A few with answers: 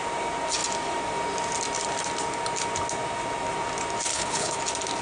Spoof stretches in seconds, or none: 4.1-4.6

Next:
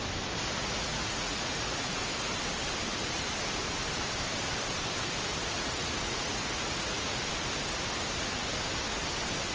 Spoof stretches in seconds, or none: 0.6-2.3; 5.4-7.2

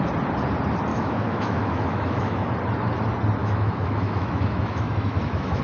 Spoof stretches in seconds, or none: 0.9-2.5; 3.4-5.6

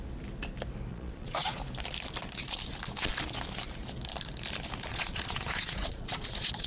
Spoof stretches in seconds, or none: 0.9-1.6; 4.9-6.7

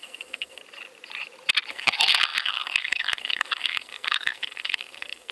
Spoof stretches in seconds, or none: 0.0-0.6; 1.7-5.3

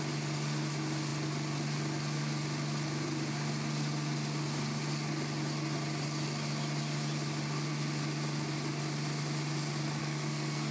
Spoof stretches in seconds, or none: 10.0-10.7

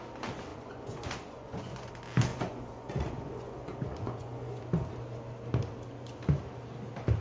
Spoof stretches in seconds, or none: 0.5-1.9; 2.3-4.6